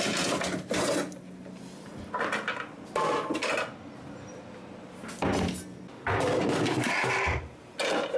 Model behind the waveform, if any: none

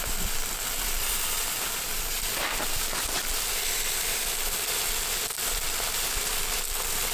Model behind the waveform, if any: vocoder, BigVGAN v2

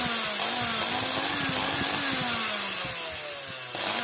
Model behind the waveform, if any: none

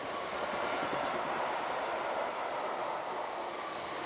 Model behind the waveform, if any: none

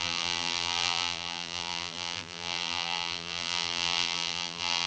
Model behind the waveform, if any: vocoder, BigVGAN v2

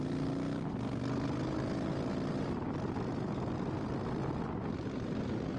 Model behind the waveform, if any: none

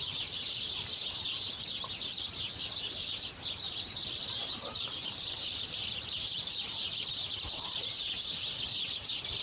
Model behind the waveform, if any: vocoder, BigVGAN v2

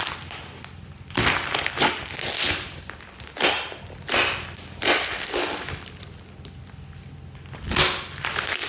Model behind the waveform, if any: none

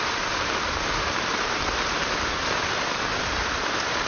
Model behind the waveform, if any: vocoder, BigVGAN v2